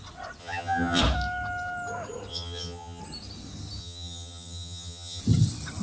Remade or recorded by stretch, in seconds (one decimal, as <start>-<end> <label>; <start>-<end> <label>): 0.0-0.4 recorded; 0.4-1.0 remade; 1.0-2.3 recorded; 2.3-3.0 remade; 3.0-3.8 recorded; 3.8-5.2 remade; 5.2-5.8 recorded